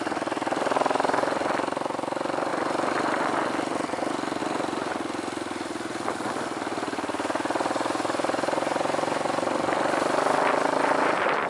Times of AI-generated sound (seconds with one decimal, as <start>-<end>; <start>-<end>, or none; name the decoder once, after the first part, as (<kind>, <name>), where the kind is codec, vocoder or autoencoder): none